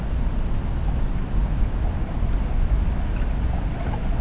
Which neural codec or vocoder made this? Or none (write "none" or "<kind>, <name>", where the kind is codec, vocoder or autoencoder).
none